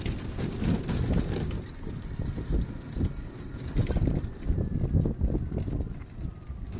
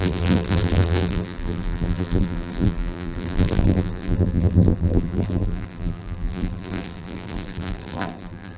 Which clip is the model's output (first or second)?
second